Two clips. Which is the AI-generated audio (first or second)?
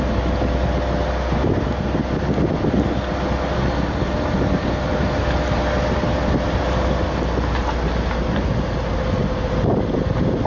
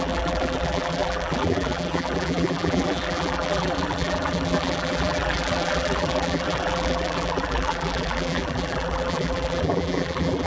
second